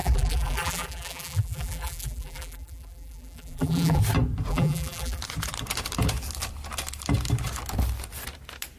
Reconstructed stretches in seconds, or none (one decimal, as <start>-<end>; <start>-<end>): 0.0-4.0; 4.5-5.2